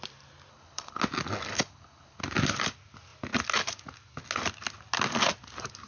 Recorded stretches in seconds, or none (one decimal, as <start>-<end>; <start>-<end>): 0.0-0.5; 1.0-1.5; 2.2-5.9